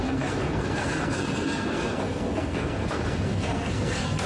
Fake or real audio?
fake